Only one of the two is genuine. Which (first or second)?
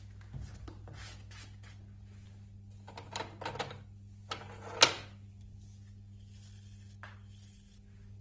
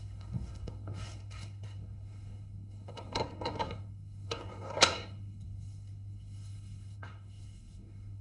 first